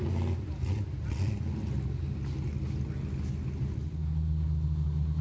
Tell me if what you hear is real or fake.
real